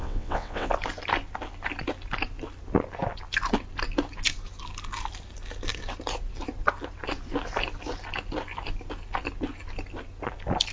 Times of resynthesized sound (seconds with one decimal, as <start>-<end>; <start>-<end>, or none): 0.0-0.7